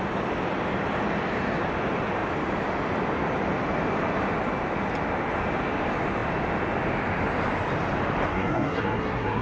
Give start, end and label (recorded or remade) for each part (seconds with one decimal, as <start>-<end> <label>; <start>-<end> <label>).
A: 0.0-8.3 recorded; 8.3-9.4 remade